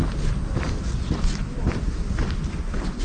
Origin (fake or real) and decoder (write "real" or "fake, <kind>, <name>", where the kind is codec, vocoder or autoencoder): real